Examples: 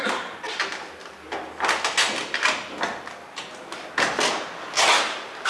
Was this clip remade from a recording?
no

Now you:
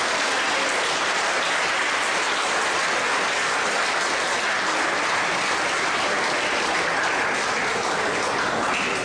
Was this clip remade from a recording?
no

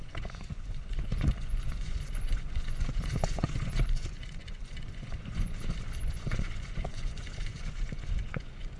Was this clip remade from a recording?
yes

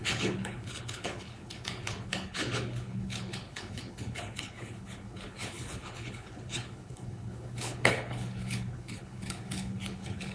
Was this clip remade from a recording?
yes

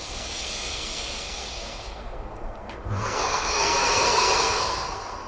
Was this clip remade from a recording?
yes